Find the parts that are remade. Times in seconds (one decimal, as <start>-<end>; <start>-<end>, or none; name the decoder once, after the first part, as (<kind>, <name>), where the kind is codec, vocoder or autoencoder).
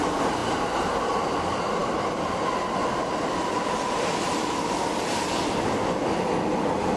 none